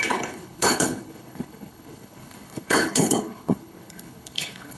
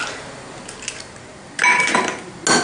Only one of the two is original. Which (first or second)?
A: second